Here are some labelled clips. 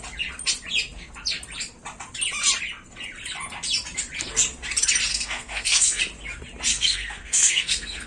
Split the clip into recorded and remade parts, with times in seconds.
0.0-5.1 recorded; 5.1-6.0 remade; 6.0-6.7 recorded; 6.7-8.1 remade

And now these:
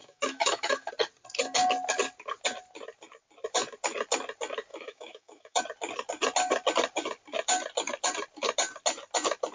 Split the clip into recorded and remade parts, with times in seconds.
0.0-0.9 remade; 0.9-4.7 recorded; 4.7-5.6 remade; 5.6-9.5 recorded

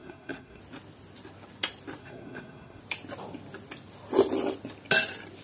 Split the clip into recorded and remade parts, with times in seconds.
0.0-0.6 remade; 0.6-2.0 recorded; 2.0-2.8 remade; 2.8-5.4 recorded

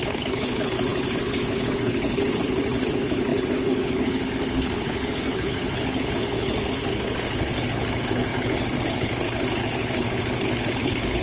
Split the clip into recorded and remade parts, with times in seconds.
0.0-11.2 remade

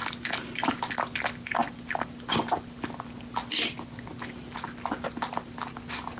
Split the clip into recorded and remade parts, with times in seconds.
0.0-6.2 recorded

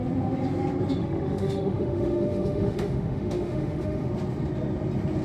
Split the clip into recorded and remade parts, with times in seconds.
0.0-1.0 recorded; 1.0-4.1 remade; 4.1-5.2 recorded